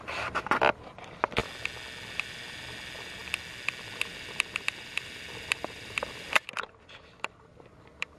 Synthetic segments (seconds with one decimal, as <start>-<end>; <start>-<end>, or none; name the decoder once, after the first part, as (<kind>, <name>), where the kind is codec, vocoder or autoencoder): 0.0-1.4 (vocoder, BigVGAN v2); 2.1-3.2; 3.9-8.2